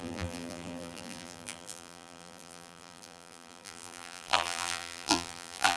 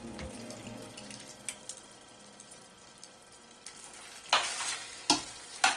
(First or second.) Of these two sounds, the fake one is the first